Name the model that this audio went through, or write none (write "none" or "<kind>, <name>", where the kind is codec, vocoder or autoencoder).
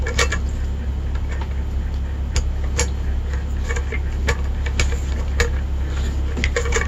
none